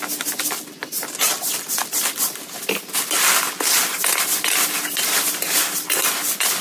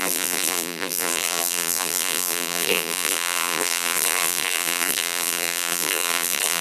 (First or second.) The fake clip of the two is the second